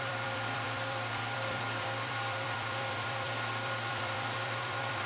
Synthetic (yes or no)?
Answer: yes